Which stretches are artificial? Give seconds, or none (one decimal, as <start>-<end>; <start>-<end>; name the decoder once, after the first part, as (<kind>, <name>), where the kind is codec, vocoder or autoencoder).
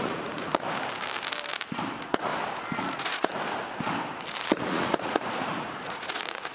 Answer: 0.0-0.5 (vocoder, Vocos); 1.9-2.3; 2.8-3.3; 4.7-6.5